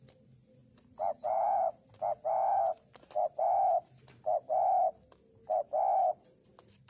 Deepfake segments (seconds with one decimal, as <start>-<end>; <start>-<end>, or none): 0.6-1.9